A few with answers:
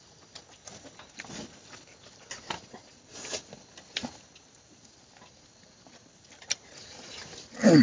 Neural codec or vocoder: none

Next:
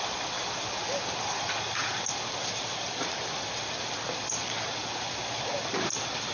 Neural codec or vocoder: none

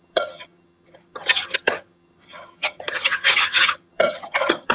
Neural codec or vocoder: vocoder, HiFi-GAN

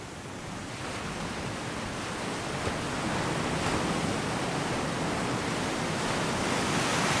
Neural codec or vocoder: none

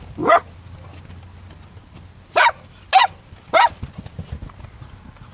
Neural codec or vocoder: none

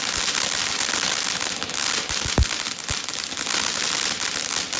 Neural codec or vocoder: none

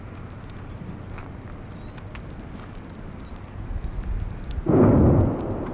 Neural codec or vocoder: none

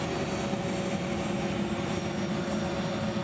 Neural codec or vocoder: none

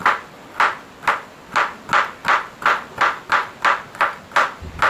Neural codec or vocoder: none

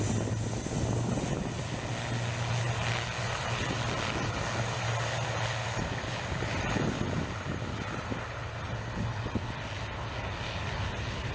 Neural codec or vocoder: none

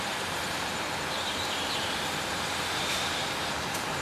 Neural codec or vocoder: vocoder, BigVGAN v2